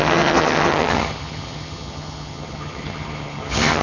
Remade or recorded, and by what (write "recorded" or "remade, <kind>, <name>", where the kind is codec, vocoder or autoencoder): remade, vocoder, HiFi-GAN